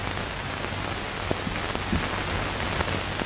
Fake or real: real